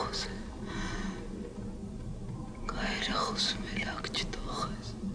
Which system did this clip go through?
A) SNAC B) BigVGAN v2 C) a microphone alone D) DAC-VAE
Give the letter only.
C